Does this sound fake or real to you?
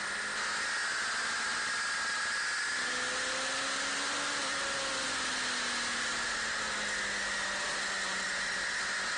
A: real